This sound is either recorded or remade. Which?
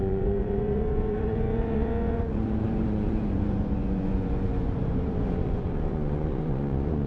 remade